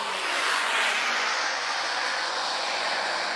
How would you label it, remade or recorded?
remade